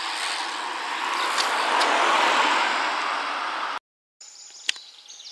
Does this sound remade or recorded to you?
recorded